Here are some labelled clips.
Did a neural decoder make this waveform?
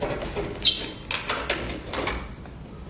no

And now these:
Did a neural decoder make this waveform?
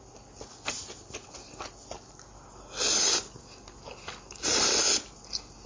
no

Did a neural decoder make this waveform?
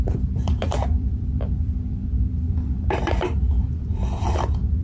yes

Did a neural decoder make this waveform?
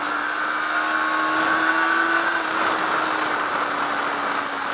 no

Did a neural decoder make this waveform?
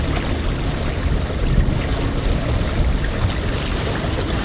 no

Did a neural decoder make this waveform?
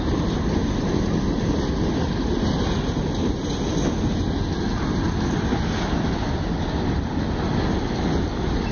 no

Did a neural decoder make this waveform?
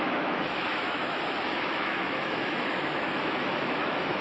yes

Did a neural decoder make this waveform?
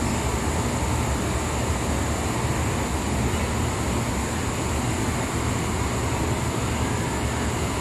no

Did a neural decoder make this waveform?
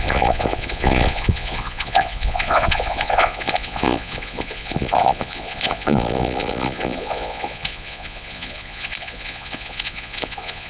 yes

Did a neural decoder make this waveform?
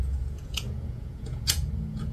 yes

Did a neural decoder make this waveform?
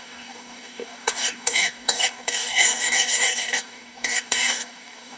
yes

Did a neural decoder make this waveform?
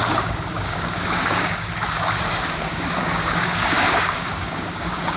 yes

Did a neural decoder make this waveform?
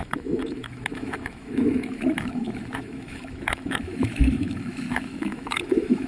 yes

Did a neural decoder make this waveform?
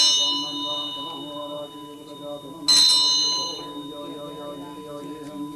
no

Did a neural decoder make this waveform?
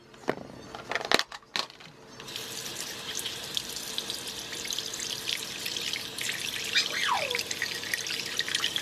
no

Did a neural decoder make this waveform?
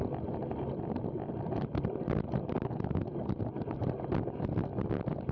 no